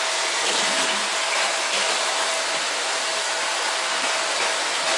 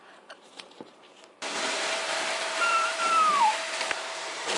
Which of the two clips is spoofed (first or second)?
second